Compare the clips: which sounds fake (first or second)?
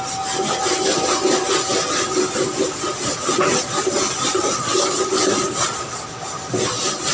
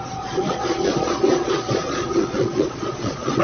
second